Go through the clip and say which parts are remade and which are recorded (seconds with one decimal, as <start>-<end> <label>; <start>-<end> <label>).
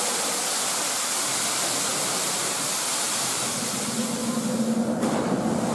0.0-1.9 recorded; 1.9-3.8 remade; 3.8-5.7 recorded